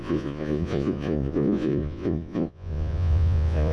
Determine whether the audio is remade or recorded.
remade